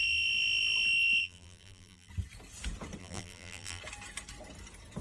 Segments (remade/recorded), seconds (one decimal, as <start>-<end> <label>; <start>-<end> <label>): 0.0-1.2 recorded; 1.2-2.1 remade; 2.1-3.0 recorded; 3.0-3.8 remade; 3.8-5.0 recorded